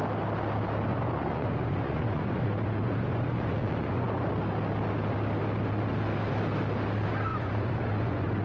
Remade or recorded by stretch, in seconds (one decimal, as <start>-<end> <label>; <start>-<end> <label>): 0.0-0.9 recorded; 0.9-4.3 remade; 4.3-7.3 recorded; 7.3-8.4 remade

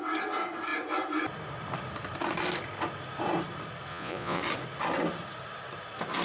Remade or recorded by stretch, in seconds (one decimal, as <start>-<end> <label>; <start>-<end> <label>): 0.0-3.9 recorded; 3.9-4.4 remade; 4.4-6.2 recorded

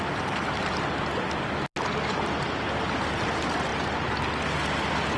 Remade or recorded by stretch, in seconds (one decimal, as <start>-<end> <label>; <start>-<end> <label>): 0.0-5.2 recorded

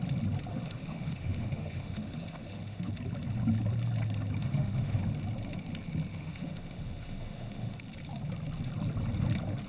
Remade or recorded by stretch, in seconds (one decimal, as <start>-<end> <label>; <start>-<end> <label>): 0.0-0.5 recorded; 0.5-2.9 remade; 2.9-4.4 recorded; 4.4-5.0 remade; 5.0-6.1 recorded; 6.1-7.8 remade; 7.8-9.7 recorded

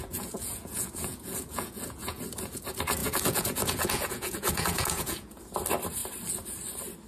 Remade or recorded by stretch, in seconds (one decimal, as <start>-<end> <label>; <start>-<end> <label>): 0.0-2.2 remade; 2.2-3.0 recorded; 3.0-5.4 remade; 5.4-7.1 recorded